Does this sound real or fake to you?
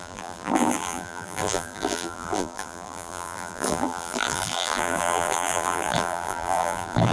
fake